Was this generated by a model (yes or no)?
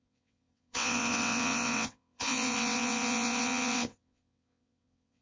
yes